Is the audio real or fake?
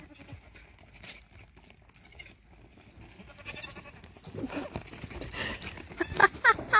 real